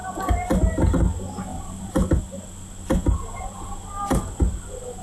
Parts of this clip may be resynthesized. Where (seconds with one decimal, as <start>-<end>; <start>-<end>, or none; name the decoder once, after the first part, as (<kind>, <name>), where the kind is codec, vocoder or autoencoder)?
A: 1.5-2.2 (vocoder, BigVGAN v2); 3.0-4.4